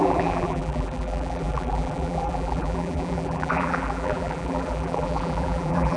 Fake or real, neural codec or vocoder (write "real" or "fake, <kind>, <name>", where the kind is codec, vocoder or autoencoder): fake, vocoder, BigVGAN v2